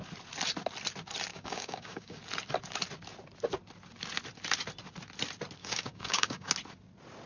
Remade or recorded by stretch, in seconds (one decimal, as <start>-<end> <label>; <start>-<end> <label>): 0.0-1.3 recorded; 1.3-2.2 remade; 2.2-5.6 recorded; 5.6-6.5 remade; 6.5-7.3 recorded